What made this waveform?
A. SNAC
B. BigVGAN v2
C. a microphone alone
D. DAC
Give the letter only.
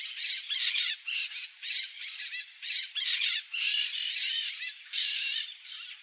B